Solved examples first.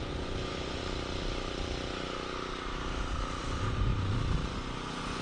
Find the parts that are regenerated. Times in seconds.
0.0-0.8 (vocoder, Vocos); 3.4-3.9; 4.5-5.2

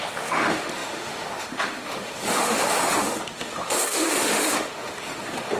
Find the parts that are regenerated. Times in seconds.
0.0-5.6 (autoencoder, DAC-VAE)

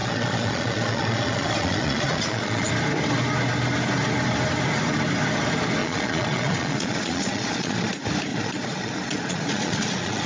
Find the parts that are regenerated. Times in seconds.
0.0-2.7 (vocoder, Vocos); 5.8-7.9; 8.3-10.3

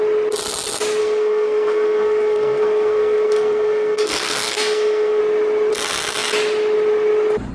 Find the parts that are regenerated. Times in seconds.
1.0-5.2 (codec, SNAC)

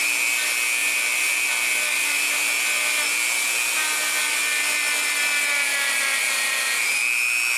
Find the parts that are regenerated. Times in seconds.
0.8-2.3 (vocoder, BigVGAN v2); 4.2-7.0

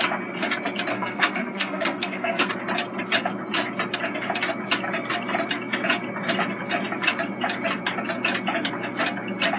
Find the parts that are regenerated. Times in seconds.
0.9-2.5 (codec, SNAC)

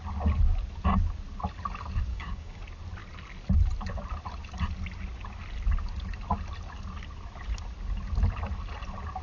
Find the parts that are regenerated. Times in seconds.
2.1-2.6 (codec, DAC)